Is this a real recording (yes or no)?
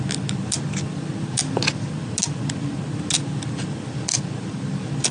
yes